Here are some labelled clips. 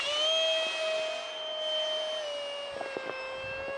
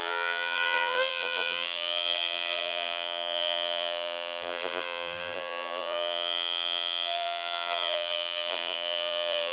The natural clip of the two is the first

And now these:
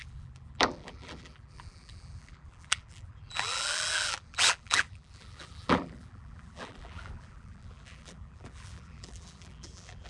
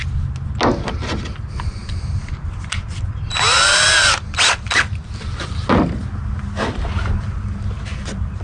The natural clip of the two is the second